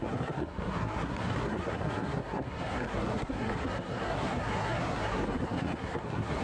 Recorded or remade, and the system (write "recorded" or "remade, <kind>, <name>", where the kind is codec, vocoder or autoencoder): remade, codec, SNAC